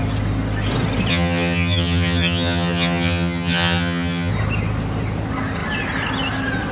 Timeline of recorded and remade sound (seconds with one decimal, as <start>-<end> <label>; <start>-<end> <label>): 0.0-1.1 recorded; 1.1-4.3 remade; 4.3-6.7 recorded